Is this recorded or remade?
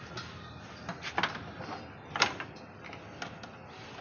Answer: recorded